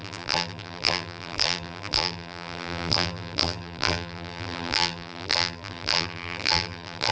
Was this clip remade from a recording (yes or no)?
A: yes